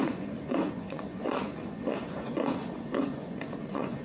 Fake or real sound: fake